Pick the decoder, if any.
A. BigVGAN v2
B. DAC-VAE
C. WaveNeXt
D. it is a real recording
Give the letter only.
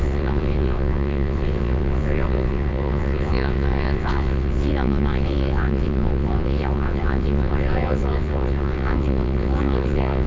C